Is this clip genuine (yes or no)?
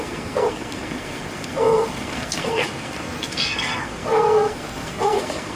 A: no